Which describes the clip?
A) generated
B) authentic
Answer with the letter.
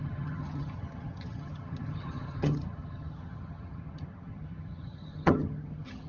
A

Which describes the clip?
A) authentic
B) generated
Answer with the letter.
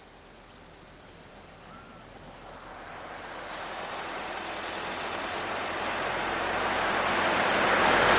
A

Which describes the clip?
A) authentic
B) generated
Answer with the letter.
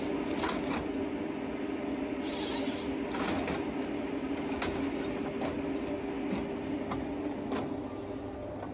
A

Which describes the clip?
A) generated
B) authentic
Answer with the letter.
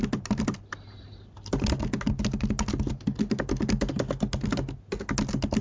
B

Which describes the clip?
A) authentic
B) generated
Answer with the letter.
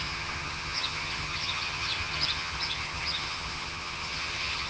B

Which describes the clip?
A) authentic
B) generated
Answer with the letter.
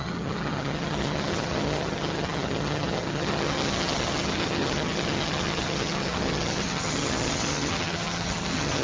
B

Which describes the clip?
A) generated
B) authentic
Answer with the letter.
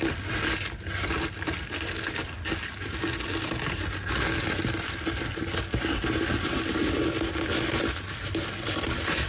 B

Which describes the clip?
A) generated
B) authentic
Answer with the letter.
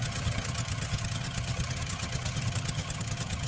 A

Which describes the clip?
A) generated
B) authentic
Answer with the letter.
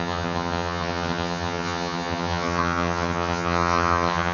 A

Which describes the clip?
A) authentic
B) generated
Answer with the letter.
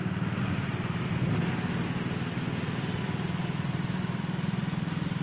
A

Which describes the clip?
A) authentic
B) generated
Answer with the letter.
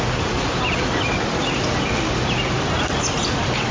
A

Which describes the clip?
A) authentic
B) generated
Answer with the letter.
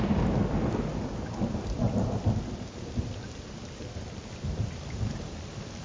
A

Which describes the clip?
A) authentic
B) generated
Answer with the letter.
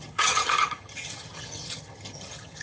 B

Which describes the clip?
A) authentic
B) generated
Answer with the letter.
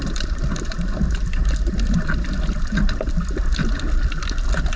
A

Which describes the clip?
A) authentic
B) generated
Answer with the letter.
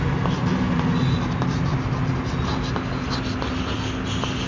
A